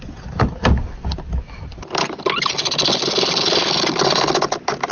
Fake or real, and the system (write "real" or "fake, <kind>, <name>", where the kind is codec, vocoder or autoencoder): real